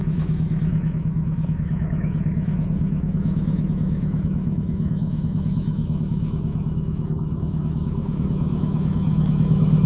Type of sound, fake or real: fake